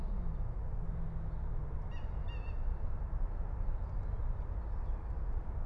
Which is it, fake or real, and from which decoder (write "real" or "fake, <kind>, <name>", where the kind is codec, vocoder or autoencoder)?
real